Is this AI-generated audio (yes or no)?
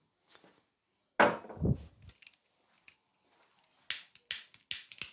no